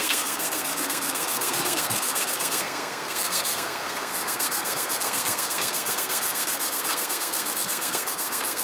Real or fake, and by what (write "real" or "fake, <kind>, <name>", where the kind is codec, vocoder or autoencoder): fake, codec, SNAC